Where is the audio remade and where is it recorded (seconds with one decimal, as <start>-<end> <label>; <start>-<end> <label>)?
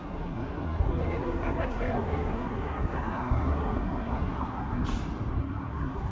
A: 0.0-4.8 remade; 4.8-5.4 recorded; 5.4-6.1 remade